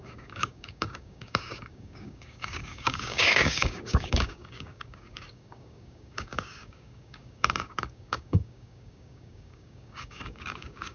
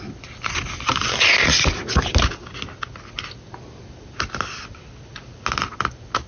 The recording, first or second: second